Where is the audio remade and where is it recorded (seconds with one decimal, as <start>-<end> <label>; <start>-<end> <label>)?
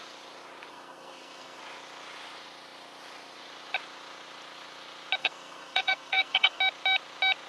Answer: 0.0-0.7 recorded; 0.7-1.6 remade; 1.6-5.2 recorded; 5.2-6.6 remade; 6.6-7.5 recorded